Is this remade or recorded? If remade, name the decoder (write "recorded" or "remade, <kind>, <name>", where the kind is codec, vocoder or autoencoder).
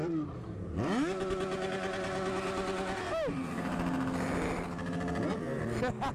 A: recorded